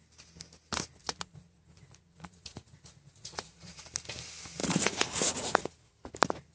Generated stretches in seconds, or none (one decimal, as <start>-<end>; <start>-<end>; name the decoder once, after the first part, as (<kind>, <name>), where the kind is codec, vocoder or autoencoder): 1.0-3.8 (vocoder, Vocos); 4.6-6.1